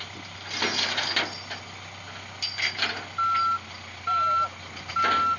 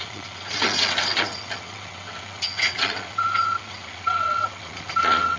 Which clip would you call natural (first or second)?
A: first